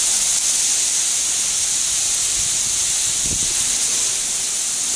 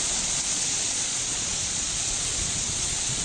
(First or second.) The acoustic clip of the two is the first